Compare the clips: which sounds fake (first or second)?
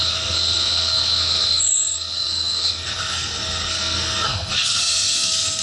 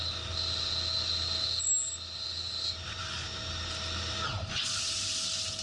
first